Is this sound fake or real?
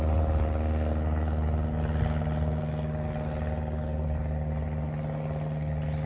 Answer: real